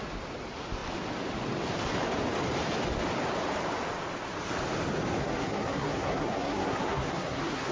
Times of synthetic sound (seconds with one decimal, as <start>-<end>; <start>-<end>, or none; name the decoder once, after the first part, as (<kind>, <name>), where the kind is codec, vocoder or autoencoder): 5.2-7.7 (codec, SNAC)